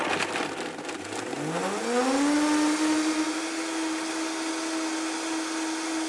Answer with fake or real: real